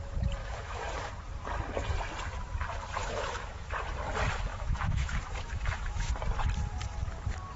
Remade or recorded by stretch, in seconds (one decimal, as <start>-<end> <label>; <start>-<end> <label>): 0.0-0.4 recorded; 0.4-1.1 remade; 1.1-3.0 recorded; 3.0-3.8 remade; 3.8-4.5 recorded; 4.5-6.1 remade; 6.1-7.6 recorded